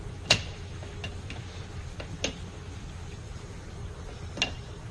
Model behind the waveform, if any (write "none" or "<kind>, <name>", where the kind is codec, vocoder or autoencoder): none